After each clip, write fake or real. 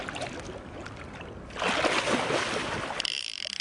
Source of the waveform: real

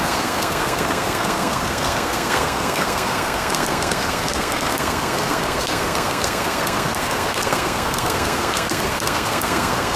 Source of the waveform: fake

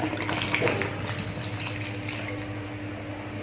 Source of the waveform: real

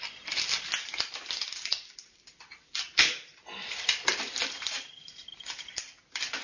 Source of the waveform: real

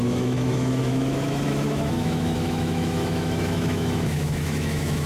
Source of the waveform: fake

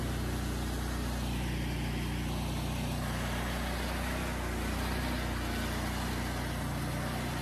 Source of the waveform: real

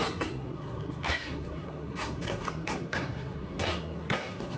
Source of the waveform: fake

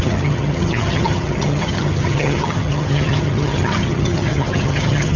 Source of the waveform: fake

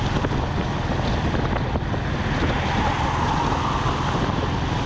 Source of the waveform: real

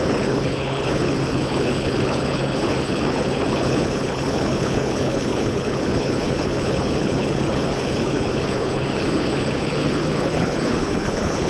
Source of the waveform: fake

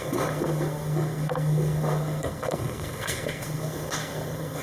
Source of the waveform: fake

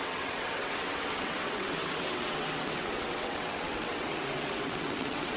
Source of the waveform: fake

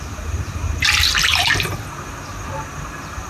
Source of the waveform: real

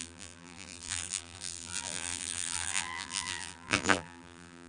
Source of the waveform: fake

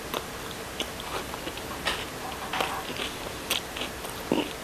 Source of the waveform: real